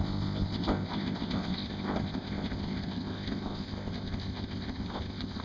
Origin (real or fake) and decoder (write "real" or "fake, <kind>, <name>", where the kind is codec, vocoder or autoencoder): fake, codec, ZipCodec